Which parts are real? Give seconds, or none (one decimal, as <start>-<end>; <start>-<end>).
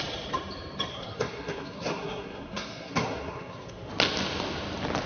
0.0-0.9; 3.9-5.1